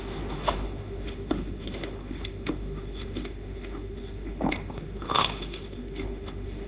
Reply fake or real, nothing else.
fake